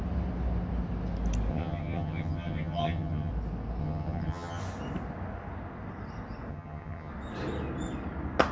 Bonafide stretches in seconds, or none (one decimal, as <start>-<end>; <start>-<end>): 0.0-1.5; 3.3-3.8; 4.6-6.5; 7.1-8.5